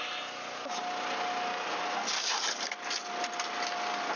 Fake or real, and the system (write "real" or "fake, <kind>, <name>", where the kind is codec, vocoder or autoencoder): real